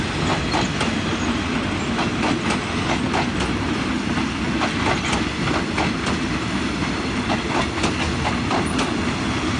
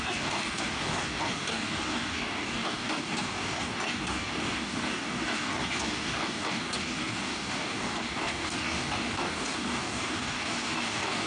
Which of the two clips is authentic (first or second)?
first